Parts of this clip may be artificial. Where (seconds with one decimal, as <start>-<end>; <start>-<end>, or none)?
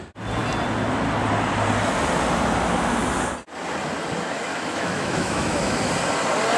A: 4.5-5.9